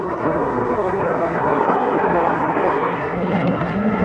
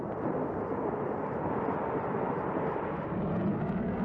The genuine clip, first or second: second